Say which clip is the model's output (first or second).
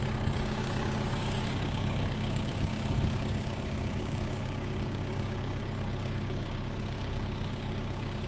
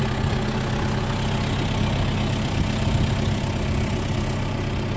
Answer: first